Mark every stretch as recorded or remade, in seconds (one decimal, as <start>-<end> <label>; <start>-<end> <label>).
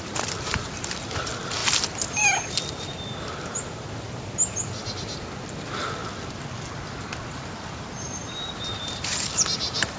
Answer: 0.0-6.0 remade; 6.0-7.5 recorded; 7.5-10.0 remade